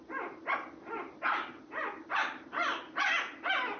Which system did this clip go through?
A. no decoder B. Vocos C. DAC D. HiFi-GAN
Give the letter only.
A